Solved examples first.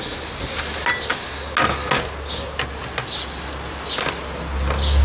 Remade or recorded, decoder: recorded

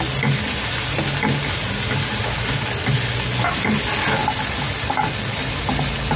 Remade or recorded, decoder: recorded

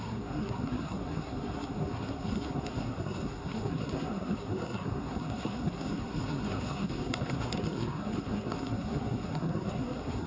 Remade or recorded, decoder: remade, codec, SNAC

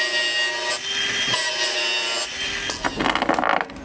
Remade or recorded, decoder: recorded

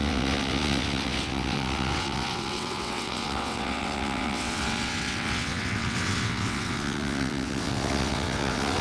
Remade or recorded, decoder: remade, vocoder, WaveNeXt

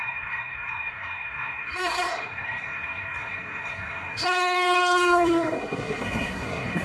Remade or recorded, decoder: remade, codec, SNAC